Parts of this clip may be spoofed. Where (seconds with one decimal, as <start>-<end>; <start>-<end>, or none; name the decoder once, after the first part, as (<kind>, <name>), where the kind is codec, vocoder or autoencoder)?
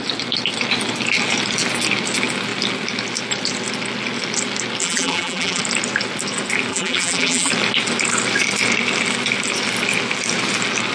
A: 4.8-5.6 (vocoder, BigVGAN v2); 6.7-7.5